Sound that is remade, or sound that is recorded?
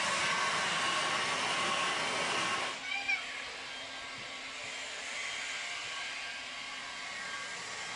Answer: recorded